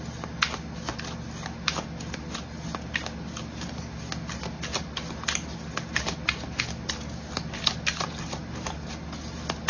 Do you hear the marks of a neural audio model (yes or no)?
no